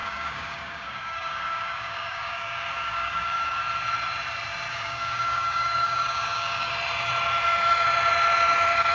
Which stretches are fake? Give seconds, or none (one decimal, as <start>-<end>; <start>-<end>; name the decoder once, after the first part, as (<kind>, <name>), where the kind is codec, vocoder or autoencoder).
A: 0.0-3.6 (codec, DAC); 4.7-6.7